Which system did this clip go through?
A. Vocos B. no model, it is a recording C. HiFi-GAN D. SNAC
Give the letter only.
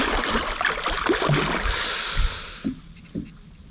B